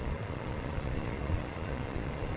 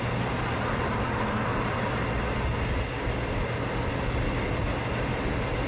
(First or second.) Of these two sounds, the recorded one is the second